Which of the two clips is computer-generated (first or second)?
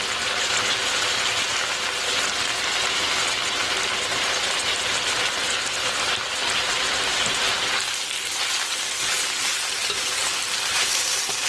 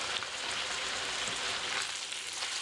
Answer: second